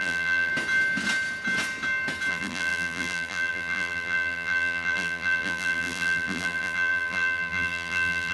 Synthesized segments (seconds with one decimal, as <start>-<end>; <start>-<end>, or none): 0.0-0.5; 2.3-8.3